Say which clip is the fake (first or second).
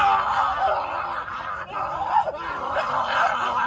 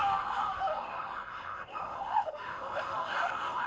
second